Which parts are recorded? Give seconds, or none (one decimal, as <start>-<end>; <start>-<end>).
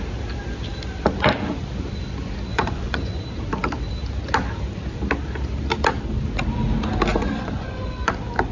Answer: 0.0-2.5; 3.2-7.2; 8.1-8.5